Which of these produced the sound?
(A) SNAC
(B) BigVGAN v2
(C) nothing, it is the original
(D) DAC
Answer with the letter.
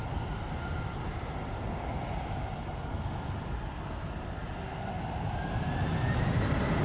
C